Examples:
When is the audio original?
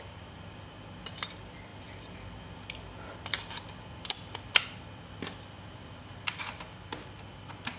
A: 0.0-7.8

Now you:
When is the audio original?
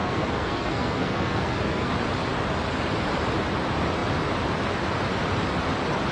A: 1.9-6.1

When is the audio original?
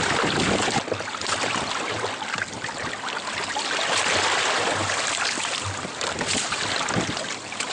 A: 0.0-7.7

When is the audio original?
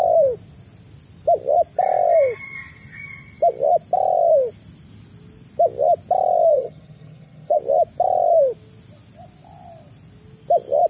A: 0.0-6.5; 7.6-10.9